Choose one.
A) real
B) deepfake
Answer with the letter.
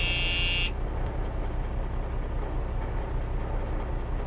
A